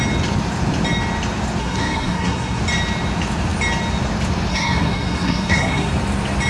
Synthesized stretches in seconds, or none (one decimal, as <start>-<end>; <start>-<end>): 1.6-2.6; 4.5-5.9